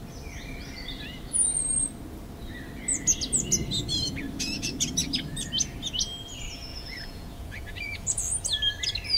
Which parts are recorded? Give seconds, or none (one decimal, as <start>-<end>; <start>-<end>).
0.0-6.7; 8.2-9.2